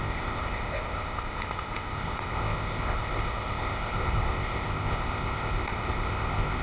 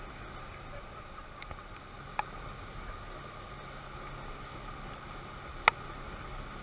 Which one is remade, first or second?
first